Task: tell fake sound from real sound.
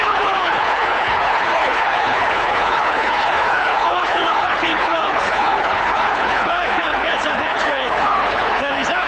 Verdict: fake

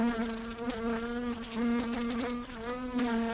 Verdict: real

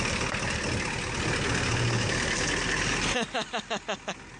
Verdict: real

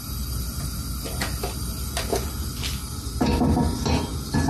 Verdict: real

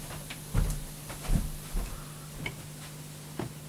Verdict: real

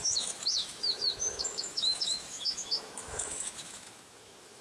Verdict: fake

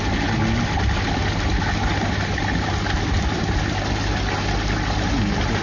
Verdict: real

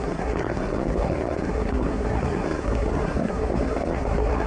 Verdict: fake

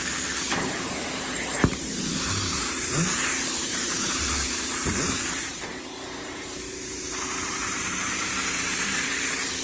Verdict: fake